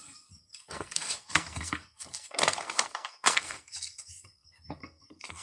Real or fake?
fake